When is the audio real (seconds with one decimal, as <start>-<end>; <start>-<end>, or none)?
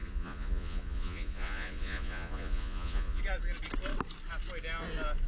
3.2-5.3